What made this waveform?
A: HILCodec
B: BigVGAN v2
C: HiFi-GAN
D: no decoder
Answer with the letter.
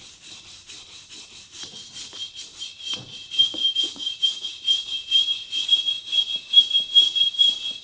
B